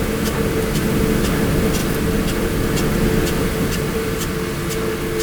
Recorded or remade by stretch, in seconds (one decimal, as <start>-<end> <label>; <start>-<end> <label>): 0.0-5.2 recorded